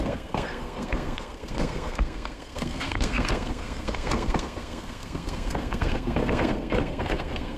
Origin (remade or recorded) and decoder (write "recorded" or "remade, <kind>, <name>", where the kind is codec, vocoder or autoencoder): remade, codec, SNAC